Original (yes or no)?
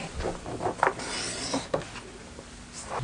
yes